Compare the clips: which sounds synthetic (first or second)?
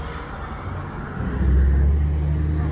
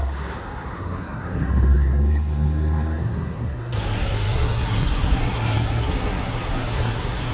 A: second